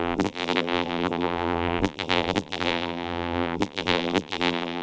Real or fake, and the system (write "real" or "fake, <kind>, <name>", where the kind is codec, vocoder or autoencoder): fake, vocoder, BigVGAN v2